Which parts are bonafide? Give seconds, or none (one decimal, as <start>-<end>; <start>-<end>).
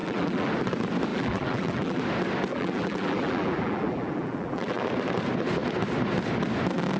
0.5-1.1; 2.0-2.5; 4.8-7.0